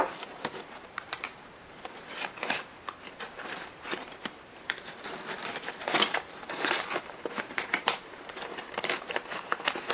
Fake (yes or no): yes